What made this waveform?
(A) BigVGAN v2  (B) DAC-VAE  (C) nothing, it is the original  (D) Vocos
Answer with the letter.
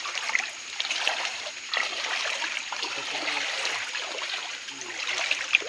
C